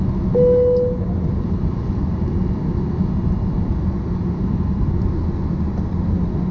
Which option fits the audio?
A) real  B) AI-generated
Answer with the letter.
A